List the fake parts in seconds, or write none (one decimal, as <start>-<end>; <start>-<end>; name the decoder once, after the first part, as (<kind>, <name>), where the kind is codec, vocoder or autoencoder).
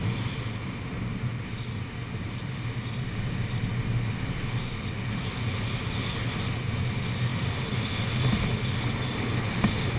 none